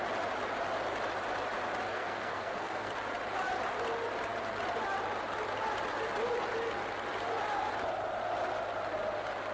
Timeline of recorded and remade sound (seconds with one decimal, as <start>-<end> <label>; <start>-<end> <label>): 0.0-1.9 recorded; 1.9-2.9 remade; 2.9-9.5 recorded